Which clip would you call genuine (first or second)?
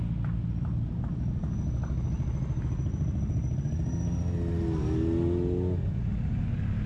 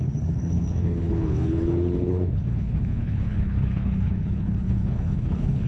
first